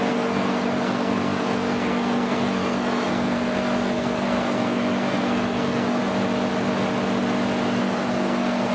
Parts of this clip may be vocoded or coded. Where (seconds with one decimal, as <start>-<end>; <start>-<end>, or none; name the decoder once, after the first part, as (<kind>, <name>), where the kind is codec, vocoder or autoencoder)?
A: 0.0-6.0 (codec, SNAC); 7.8-8.7

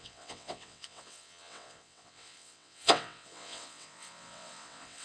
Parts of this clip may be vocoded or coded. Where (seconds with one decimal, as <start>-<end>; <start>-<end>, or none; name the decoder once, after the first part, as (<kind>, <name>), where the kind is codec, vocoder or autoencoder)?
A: 0.0-5.0 (vocoder, WaveNeXt)